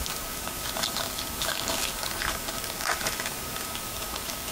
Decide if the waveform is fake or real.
fake